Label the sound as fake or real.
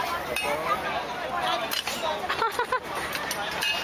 real